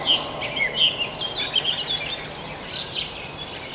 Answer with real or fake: real